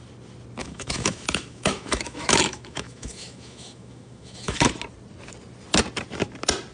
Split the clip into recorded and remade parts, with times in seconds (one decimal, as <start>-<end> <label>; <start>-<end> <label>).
0.0-0.6 recorded; 0.6-4.6 remade; 4.6-6.7 recorded